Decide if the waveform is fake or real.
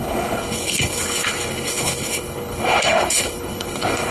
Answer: fake